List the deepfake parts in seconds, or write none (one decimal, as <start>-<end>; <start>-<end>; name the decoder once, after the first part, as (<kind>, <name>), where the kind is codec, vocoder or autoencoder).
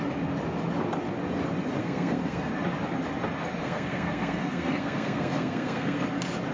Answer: 1.8-2.5 (codec, SNAC); 3.6-6.0